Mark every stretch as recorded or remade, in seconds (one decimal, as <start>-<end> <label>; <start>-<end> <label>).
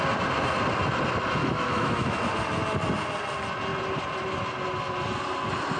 0.0-1.4 recorded; 1.4-2.2 remade; 2.2-5.8 recorded